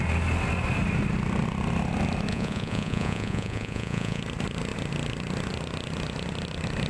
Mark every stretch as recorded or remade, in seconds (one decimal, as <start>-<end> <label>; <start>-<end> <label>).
0.0-2.3 recorded; 2.3-4.2 remade; 4.2-6.9 recorded